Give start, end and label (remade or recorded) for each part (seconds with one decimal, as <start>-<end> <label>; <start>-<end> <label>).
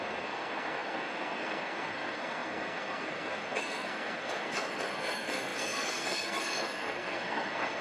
0.0-7.8 remade